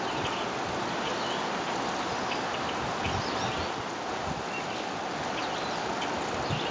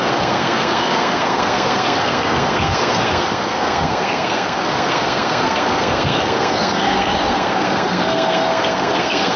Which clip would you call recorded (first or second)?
first